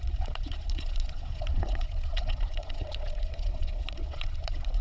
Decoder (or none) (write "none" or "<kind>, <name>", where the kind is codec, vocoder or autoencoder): vocoder, Vocos